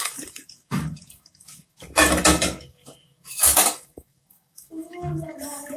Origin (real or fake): fake